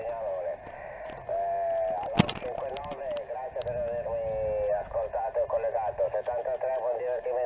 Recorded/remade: recorded